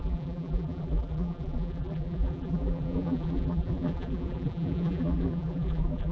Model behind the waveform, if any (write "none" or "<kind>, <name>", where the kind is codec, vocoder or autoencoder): vocoder, BigVGAN v2